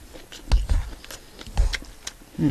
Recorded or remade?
recorded